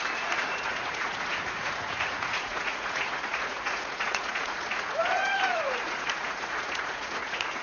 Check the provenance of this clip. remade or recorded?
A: remade